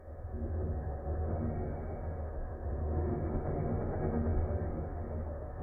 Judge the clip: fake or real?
fake